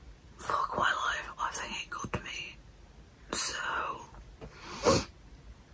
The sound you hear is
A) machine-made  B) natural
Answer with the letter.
B